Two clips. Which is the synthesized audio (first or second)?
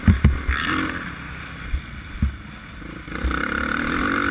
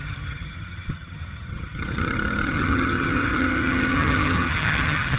second